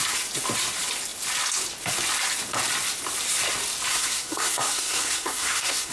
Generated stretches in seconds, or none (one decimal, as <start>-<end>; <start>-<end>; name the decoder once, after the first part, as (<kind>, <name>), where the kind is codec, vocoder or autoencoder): 3.9-5.9 (codec, SNAC)